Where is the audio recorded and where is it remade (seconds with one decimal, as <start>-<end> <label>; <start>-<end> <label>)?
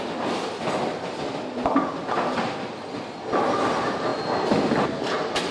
0.0-5.5 recorded